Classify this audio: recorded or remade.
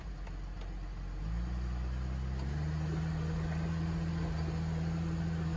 recorded